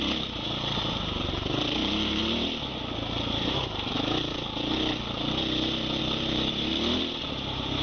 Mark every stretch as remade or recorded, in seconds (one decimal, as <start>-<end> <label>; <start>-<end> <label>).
0.0-2.2 remade; 2.2-6.0 recorded; 6.0-6.7 remade; 6.7-7.2 recorded; 7.2-7.8 remade